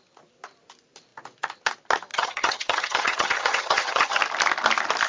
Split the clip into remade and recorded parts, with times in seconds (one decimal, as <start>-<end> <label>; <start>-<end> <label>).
0.0-2.1 recorded; 2.1-4.2 remade; 4.2-5.1 recorded